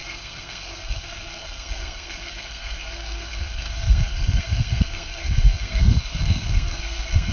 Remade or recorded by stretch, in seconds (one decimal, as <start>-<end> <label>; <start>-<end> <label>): 0.0-7.3 remade